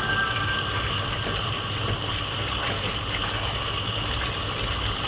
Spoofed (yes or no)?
no